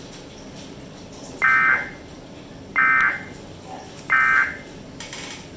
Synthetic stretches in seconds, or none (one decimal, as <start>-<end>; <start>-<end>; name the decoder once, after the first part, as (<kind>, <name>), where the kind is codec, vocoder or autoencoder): none